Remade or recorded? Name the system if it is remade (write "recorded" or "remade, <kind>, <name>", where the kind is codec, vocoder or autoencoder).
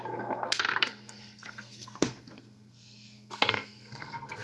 remade, codec, SNAC